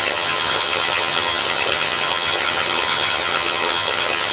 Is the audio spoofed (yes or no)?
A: yes